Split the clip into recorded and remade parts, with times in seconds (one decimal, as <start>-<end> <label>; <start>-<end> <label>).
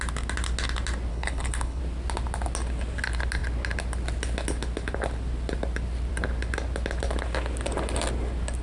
0.0-1.1 recorded; 1.1-1.8 remade; 1.8-8.6 recorded